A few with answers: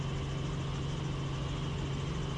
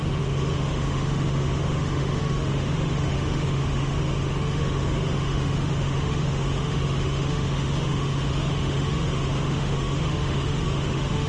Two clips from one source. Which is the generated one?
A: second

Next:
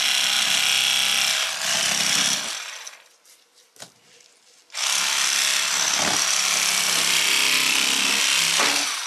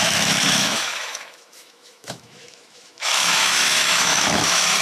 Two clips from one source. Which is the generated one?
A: second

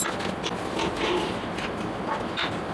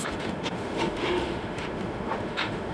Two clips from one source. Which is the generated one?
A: second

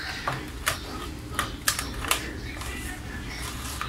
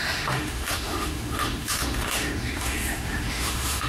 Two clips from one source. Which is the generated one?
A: second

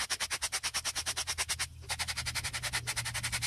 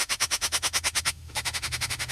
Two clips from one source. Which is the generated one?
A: second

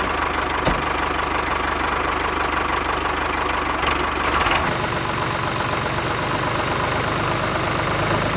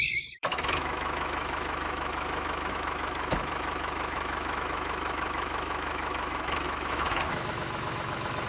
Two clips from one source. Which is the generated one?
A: second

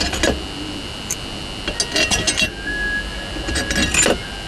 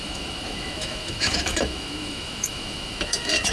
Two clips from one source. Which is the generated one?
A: second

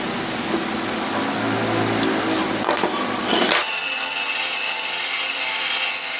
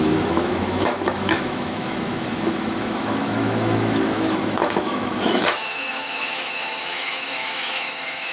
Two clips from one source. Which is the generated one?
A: second